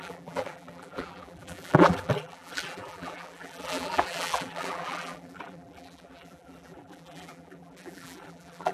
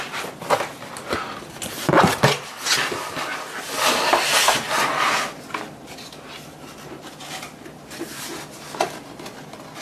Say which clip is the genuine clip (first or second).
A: second